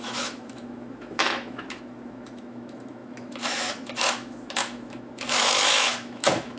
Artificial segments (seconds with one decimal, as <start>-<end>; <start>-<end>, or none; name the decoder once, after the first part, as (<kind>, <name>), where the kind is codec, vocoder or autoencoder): 0.0-6.6 (autoencoder, DAC-VAE)